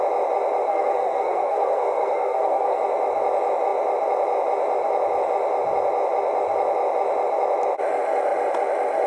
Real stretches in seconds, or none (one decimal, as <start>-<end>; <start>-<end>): 0.0-0.7; 2.8-9.1